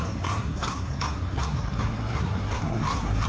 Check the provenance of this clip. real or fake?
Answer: fake